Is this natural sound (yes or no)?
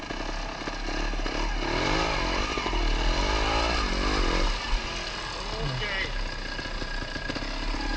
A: yes